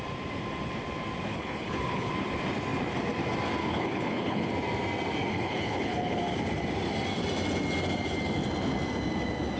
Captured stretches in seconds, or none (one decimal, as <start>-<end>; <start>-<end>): 0.0-1.3; 2.1-3.6; 4.5-5.3; 6.2-9.6